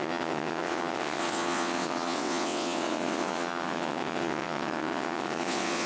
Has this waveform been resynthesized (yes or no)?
yes